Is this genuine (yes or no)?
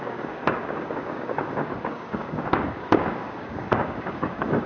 no